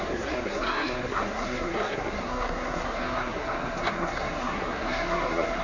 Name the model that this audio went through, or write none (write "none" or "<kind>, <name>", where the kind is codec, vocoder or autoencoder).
codec, SNAC